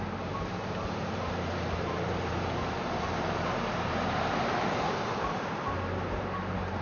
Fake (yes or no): yes